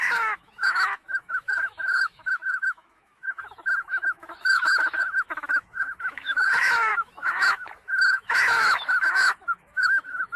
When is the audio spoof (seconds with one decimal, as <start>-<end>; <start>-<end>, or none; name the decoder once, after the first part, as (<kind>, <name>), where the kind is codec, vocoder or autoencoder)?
0.0-10.4 (autoencoder, DAC-VAE)